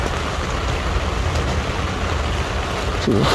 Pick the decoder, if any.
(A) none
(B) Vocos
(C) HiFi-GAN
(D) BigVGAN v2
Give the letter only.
A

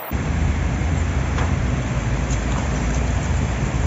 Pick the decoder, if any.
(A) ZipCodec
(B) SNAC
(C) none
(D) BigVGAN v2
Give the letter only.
D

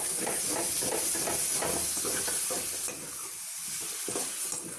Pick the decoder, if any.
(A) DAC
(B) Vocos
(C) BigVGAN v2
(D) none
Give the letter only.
D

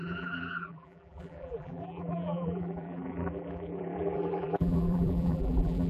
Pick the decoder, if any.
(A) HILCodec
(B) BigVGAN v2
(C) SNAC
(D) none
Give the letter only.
B